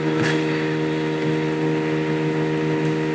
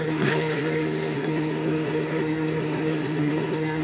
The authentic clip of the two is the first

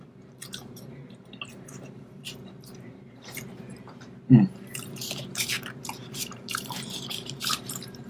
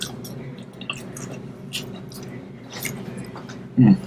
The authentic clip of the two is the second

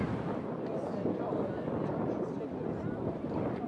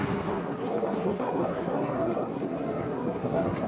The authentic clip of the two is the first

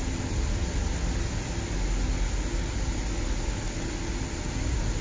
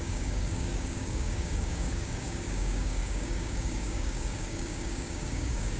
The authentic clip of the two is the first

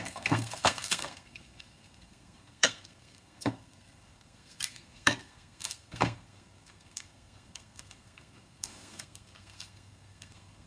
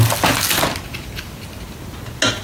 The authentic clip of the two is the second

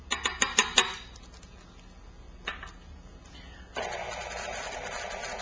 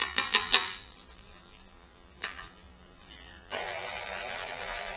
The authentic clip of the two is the first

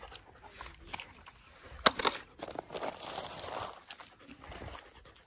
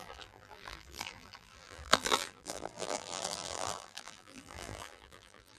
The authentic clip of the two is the first